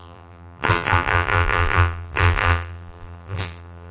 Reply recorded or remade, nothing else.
remade